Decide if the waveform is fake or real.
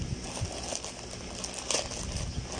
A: real